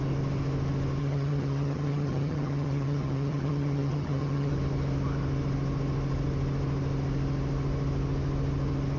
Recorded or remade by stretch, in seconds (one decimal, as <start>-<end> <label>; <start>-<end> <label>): 0.0-1.0 recorded; 1.0-4.5 remade; 4.5-9.0 recorded

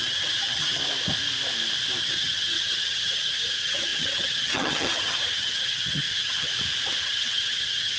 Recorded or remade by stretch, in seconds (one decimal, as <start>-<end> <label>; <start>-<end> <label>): 0.0-0.8 remade; 0.8-2.0 recorded; 2.0-6.5 remade; 6.5-7.0 recorded; 7.0-8.0 remade

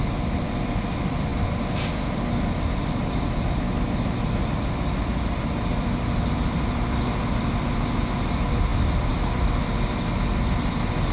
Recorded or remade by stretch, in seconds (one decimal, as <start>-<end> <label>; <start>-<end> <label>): 0.0-11.1 recorded

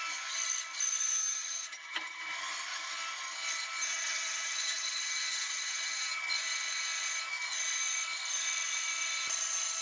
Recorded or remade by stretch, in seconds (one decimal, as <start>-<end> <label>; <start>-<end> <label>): 0.0-1.2 recorded; 1.2-2.3 remade; 2.3-3.8 recorded; 3.8-6.2 remade; 6.2-9.8 recorded

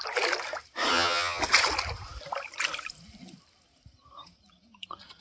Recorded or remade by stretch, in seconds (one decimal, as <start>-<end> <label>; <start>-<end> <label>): 0.0-0.9 recorded; 0.9-1.4 remade; 1.4-5.2 recorded

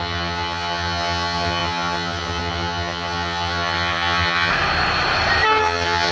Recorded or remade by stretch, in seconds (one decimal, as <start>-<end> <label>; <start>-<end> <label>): 0.0-4.5 remade; 4.5-5.6 recorded; 5.6-6.1 remade

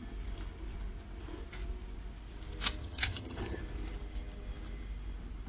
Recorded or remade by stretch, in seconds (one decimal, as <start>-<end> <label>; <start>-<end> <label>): 0.0-2.8 recorded; 2.8-3.6 remade; 3.6-5.5 recorded